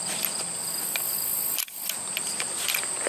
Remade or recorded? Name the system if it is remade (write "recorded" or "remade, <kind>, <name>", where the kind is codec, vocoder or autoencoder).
recorded